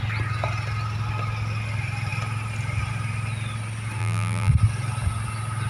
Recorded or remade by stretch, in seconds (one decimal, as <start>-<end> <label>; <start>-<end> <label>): 0.0-4.0 recorded; 4.0-4.5 remade; 4.5-5.7 recorded